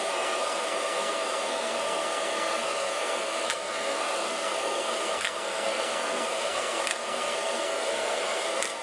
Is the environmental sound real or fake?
fake